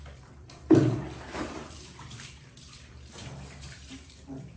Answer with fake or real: fake